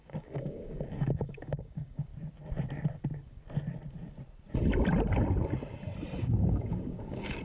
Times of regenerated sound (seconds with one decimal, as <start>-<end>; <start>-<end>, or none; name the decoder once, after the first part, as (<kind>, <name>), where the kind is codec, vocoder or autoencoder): 0.0-2.1 (codec, DAC); 6.2-7.4

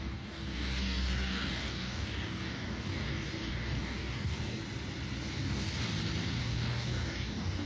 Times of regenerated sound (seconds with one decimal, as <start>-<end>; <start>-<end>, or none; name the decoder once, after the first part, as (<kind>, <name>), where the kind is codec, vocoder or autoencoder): 0.0-4.6 (codec, DAC); 5.3-5.8; 6.4-7.7

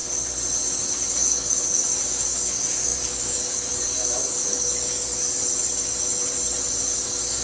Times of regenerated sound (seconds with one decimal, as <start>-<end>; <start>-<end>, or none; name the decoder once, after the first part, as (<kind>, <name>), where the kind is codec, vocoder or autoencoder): 1.1-5.3 (codec, DAC); 6.8-7.4

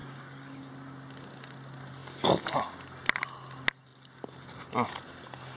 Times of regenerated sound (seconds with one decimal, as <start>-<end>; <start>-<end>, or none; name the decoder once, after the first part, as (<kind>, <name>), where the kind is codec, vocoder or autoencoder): 0.0-0.7 (codec, DAC)

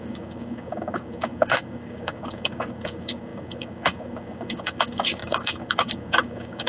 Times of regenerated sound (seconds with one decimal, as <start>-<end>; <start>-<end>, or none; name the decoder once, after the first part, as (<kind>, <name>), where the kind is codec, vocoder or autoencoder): 0.0-6.7 (codec, DAC)

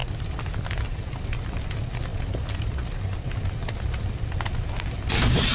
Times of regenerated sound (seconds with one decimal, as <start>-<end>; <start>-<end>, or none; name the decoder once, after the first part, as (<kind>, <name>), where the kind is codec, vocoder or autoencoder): none